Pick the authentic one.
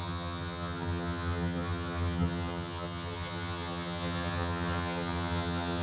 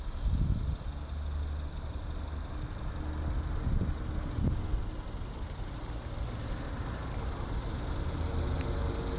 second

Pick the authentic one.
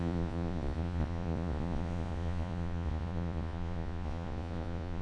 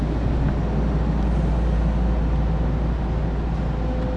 second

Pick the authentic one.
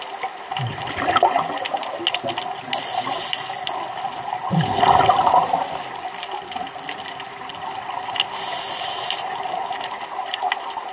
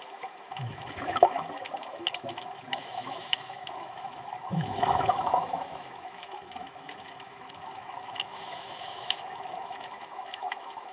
first